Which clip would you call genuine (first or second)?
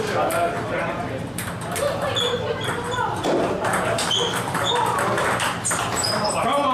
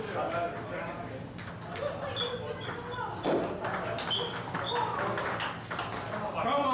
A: second